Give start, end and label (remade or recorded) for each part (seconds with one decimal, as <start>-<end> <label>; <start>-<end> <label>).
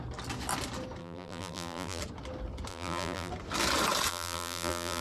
0.0-1.0 recorded; 1.0-2.0 remade; 2.0-2.7 recorded; 2.7-3.3 remade; 3.3-4.1 recorded; 4.1-5.0 remade